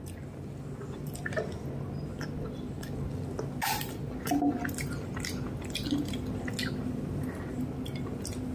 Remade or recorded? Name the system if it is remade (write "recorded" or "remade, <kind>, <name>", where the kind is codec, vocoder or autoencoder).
recorded